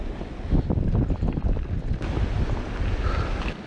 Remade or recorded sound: recorded